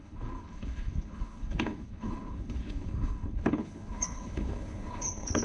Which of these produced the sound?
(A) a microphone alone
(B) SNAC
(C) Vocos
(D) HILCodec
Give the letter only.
D